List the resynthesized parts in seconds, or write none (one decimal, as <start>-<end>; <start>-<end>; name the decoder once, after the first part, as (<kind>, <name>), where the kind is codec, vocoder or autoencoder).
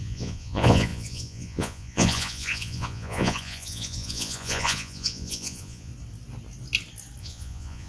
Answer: 0.0-5.9 (vocoder, Vocos); 7.2-7.9